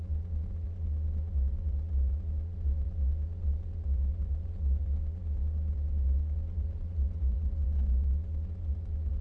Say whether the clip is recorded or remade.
remade